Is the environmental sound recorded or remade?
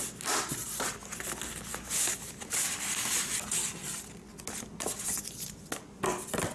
recorded